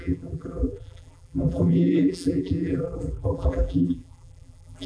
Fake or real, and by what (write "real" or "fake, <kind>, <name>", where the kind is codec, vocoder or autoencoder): fake, vocoder, BigVGAN v2